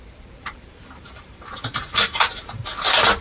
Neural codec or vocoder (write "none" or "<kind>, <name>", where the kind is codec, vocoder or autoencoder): vocoder, BigVGAN v2